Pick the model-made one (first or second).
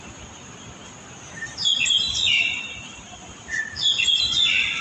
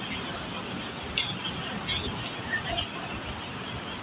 first